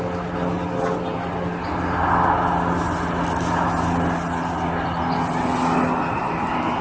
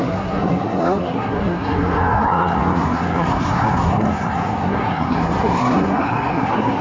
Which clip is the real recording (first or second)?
first